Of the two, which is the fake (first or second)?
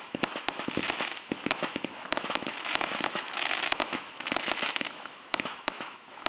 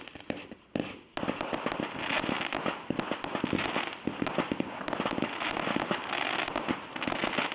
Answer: first